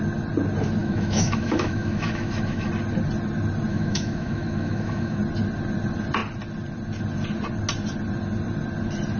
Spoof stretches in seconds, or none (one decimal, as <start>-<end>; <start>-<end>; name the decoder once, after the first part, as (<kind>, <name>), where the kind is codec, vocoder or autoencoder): 0.8-2.7 (autoencoder, DAC-VAE); 3.7-5.2